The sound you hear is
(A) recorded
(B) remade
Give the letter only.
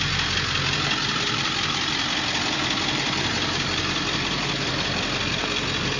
A